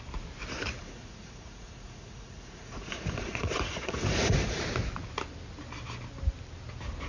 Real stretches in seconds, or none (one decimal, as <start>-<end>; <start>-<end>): 0.0-0.8; 4.6-7.1